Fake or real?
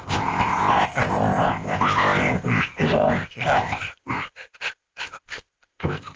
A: fake